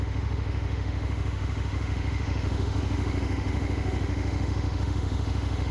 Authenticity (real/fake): fake